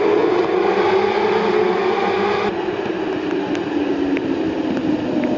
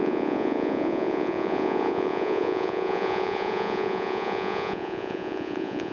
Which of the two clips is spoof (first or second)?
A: second